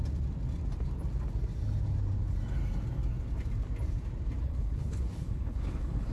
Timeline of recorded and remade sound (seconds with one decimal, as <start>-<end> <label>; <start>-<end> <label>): 0.0-4.4 recorded; 4.4-6.1 remade